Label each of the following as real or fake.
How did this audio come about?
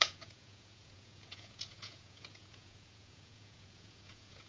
fake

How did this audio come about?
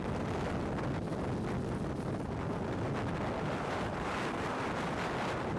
real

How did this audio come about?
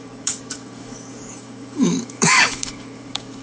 fake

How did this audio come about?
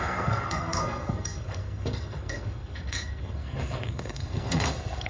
fake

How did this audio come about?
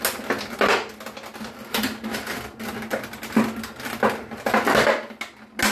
real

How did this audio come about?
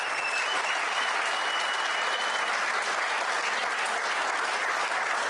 real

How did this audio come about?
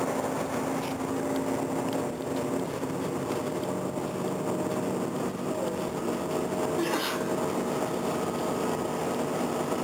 real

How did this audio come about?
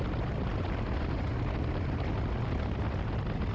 real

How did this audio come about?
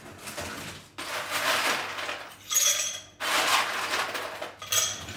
real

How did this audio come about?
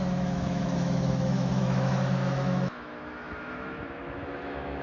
fake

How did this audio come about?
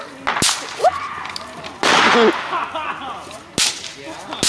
real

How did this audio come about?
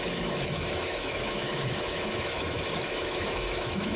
fake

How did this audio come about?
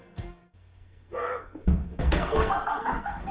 fake